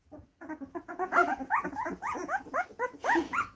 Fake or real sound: fake